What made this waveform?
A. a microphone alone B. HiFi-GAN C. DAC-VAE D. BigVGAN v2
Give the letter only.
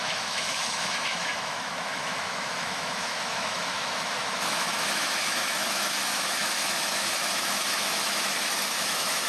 C